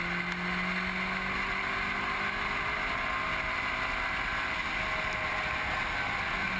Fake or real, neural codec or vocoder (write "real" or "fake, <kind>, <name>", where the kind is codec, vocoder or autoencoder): real